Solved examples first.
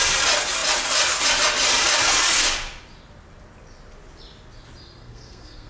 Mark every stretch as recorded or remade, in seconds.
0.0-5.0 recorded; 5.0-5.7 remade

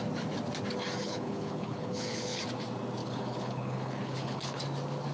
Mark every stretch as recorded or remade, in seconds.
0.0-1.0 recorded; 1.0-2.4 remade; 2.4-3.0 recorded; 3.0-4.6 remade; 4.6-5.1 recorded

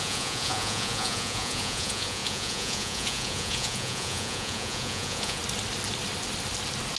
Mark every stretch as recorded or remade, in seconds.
0.0-5.4 remade; 5.4-7.0 recorded

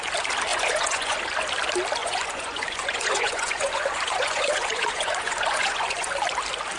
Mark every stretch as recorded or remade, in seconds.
0.0-0.5 recorded; 0.5-1.2 remade; 1.2-2.0 recorded; 2.0-6.1 remade; 6.1-6.8 recorded

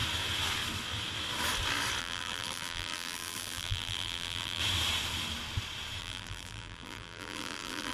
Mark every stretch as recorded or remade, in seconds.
0.0-2.0 recorded; 2.0-4.6 remade; 4.6-6.0 recorded; 6.0-7.9 remade